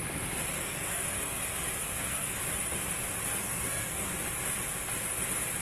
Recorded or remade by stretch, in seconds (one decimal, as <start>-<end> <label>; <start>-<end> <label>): 0.0-0.6 recorded; 0.6-1.4 remade; 1.4-1.8 recorded; 1.8-2.4 remade; 2.4-3.4 recorded; 3.4-4.1 remade; 4.1-5.6 recorded